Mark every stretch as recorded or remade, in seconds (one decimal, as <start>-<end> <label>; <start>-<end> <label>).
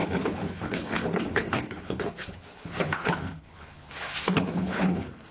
0.0-5.3 remade